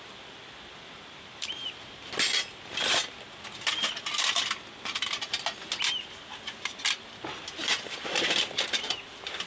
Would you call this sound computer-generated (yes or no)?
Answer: no